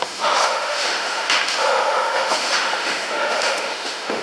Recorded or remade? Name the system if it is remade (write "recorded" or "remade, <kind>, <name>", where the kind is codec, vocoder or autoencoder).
remade, autoencoder, DAC-VAE